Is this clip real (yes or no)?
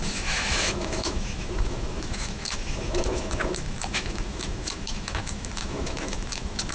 no